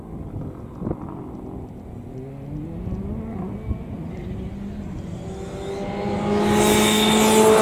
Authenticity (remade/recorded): recorded